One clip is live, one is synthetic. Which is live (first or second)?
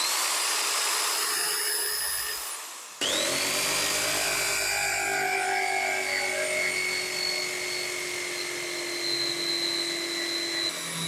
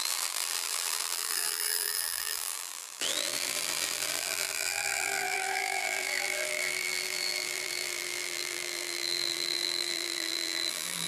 first